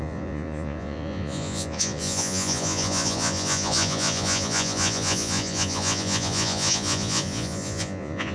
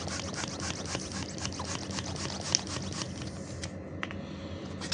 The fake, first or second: first